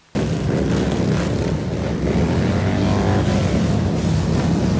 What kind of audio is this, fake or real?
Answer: real